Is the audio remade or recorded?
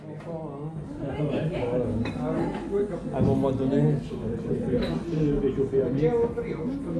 recorded